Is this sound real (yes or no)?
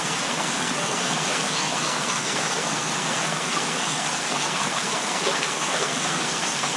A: no